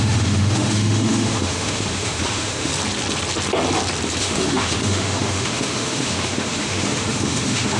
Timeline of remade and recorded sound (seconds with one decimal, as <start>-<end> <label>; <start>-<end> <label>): 0.0-2.7 remade; 2.7-4.2 recorded; 4.2-7.8 remade